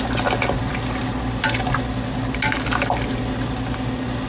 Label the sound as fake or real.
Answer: real